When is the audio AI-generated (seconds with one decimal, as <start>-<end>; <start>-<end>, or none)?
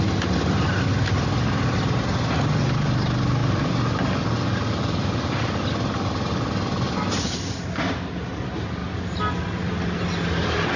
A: none